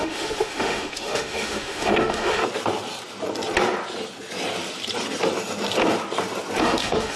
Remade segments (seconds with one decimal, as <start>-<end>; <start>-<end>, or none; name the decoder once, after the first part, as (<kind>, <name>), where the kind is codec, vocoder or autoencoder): 0.0-2.4 (autoencoder, DAC-VAE); 6.6-7.2